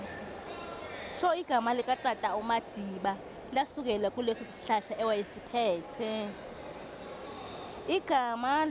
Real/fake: real